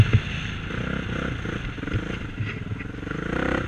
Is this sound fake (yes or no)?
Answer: no